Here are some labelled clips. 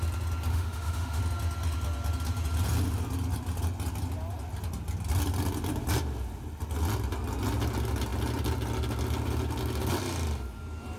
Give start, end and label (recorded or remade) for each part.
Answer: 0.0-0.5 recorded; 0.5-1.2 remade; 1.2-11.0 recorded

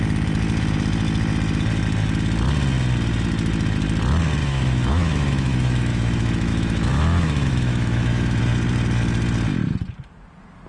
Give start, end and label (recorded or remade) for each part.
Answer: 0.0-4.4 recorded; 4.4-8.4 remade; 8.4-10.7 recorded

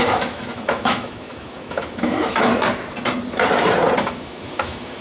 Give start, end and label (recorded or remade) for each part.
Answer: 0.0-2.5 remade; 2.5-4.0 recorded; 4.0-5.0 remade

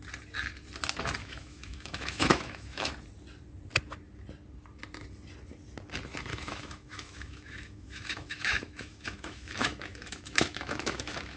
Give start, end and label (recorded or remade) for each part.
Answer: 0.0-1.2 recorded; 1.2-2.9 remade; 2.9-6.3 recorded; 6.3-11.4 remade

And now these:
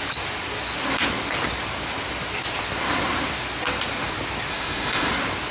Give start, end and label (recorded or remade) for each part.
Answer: 0.0-4.5 recorded; 4.5-5.1 remade; 5.1-5.5 recorded

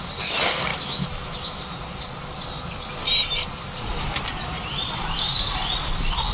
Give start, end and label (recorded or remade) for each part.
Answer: 0.0-0.7 recorded; 0.7-1.6 remade; 1.6-6.3 recorded

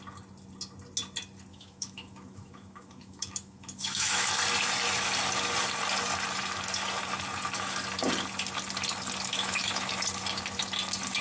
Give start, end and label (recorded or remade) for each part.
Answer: 0.0-1.5 recorded; 1.5-4.3 remade; 4.3-9.3 recorded; 9.3-9.9 remade; 9.9-11.2 recorded

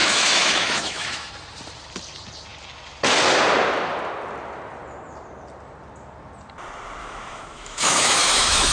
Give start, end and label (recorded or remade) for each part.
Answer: 0.0-1.3 remade; 1.3-7.0 recorded; 7.0-8.7 remade